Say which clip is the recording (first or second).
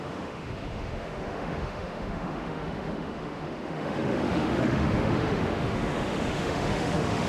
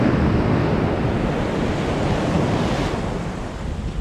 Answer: second